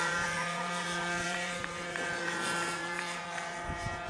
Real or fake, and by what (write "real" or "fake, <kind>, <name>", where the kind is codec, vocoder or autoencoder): fake, vocoder, Vocos